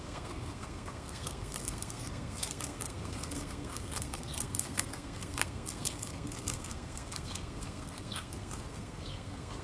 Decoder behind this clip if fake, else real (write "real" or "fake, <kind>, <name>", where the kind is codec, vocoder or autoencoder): fake, codec, SNAC